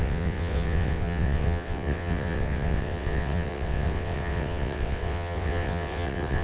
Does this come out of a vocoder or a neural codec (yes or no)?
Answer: yes